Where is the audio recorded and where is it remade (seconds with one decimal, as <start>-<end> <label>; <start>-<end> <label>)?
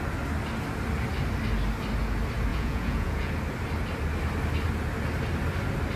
0.0-2.5 recorded; 2.5-3.3 remade; 3.3-6.0 recorded